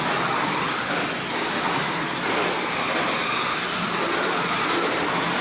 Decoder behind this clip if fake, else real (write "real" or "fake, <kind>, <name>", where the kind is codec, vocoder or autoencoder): real